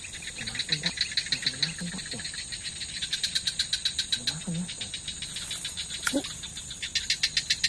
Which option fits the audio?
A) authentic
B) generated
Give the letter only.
A